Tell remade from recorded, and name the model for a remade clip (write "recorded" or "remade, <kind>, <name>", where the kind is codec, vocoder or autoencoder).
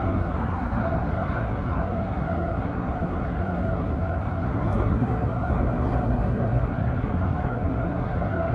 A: remade, codec, SNAC